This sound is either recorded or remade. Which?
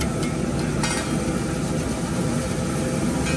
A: recorded